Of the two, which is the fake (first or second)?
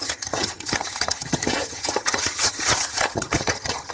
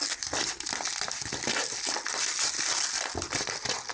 first